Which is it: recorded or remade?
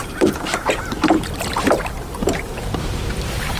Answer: remade